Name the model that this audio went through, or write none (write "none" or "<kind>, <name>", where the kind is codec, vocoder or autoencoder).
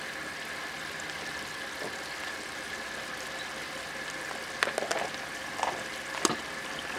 none